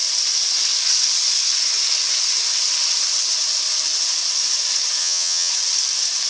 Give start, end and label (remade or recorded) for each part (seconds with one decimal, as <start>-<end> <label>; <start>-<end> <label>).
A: 0.0-5.0 recorded; 5.0-5.5 remade; 5.5-6.3 recorded